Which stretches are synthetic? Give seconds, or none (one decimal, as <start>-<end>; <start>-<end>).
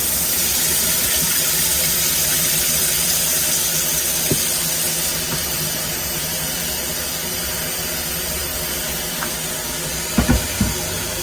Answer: 0.0-1.1